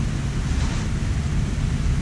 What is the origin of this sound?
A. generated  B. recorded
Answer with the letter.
A